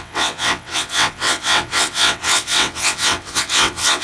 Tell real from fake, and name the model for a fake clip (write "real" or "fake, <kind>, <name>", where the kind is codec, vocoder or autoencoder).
fake, vocoder, WaveNeXt